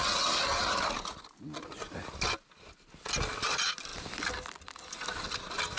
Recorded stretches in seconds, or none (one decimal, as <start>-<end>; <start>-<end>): 0.0-5.8